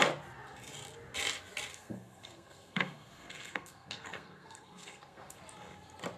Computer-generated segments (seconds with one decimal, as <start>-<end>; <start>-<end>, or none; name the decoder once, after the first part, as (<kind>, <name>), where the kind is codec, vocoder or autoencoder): 1.7-5.4 (codec, SNAC)